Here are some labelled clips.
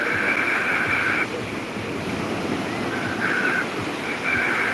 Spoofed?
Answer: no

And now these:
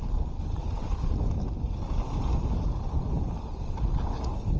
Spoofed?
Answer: yes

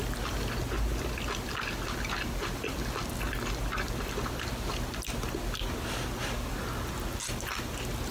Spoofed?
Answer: no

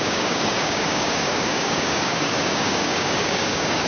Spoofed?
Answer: yes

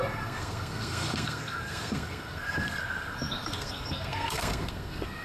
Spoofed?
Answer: yes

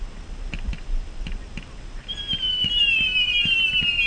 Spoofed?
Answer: no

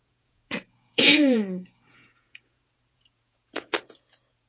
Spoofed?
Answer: yes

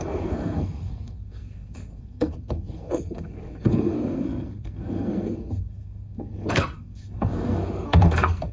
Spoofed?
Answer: yes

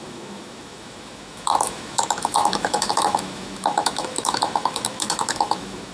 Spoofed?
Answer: yes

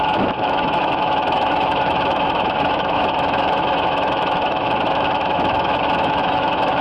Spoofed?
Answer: yes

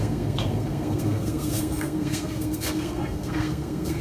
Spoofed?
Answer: yes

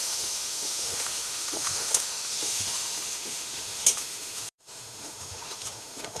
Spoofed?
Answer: yes